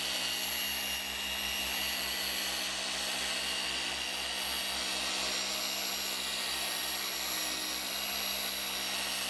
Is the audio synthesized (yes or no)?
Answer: no